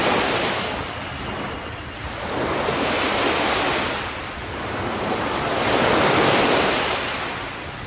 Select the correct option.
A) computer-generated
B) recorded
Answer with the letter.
B